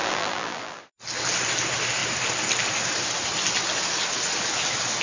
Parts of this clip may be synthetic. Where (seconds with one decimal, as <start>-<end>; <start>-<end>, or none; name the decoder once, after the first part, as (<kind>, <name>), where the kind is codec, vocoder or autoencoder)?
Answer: 0.0-0.8 (vocoder, BigVGAN v2)